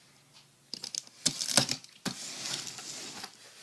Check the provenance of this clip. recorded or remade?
recorded